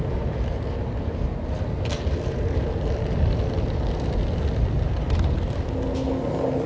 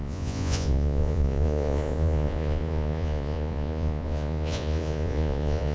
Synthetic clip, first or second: second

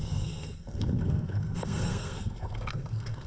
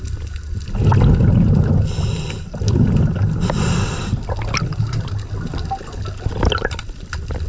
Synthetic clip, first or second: first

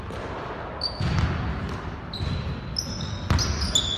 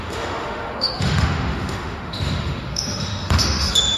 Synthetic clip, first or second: second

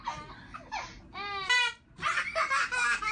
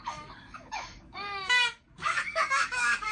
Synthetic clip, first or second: second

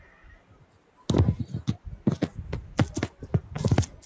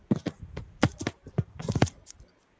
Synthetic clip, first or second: second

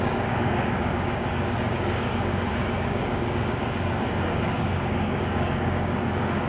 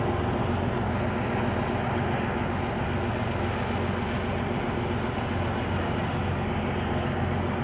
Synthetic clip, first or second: first